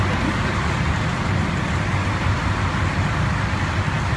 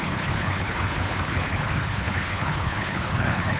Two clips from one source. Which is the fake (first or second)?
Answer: second